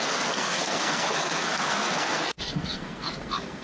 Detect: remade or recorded remade